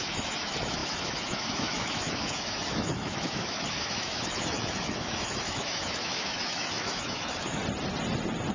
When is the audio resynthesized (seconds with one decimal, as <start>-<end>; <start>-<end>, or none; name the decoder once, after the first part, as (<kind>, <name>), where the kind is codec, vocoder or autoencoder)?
0.0-7.6 (autoencoder, DAC-VAE)